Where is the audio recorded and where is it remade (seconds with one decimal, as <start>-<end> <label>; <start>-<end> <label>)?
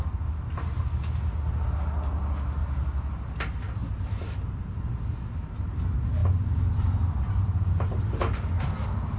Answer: 0.0-2.6 recorded; 2.6-3.1 remade; 3.1-6.2 recorded; 6.2-8.2 remade; 8.2-9.2 recorded